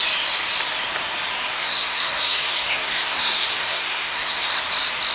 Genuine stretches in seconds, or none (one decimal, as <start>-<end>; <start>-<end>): 0.0-1.5; 4.6-5.1